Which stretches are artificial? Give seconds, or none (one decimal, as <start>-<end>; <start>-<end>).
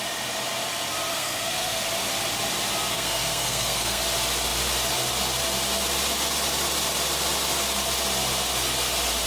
1.1-1.8; 2.9-4.0